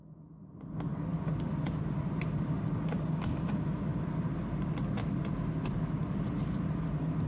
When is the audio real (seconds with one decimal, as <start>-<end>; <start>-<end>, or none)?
0.0-1.1; 1.9-3.9; 4.7-7.3